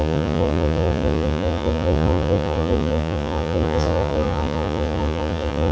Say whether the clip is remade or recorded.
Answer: remade